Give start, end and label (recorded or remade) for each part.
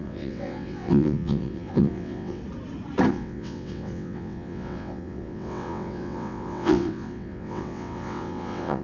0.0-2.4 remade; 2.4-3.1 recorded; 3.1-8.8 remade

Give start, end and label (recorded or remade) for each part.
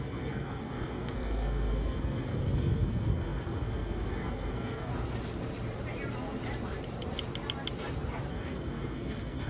0.0-4.9 remade; 4.9-8.3 recorded; 8.3-9.5 remade